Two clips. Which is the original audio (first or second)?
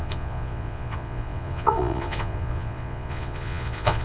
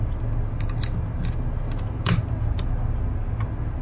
second